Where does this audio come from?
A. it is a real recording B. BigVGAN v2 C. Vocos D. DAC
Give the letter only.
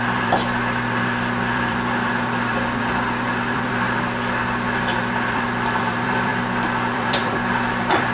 B